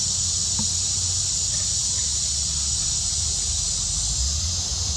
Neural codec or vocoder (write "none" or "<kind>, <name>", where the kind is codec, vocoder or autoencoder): none